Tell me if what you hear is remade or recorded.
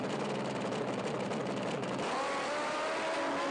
recorded